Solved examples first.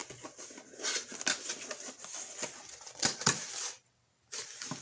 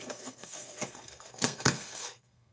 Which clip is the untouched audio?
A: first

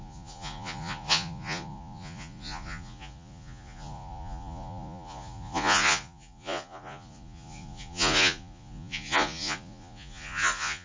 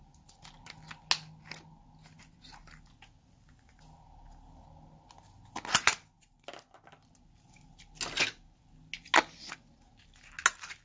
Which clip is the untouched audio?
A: second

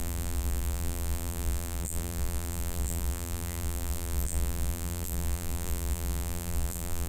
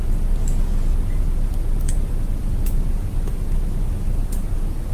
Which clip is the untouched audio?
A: second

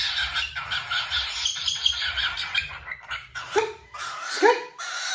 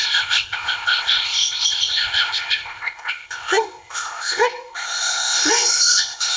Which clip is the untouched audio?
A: first